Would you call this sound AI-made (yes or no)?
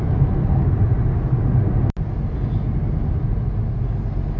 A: no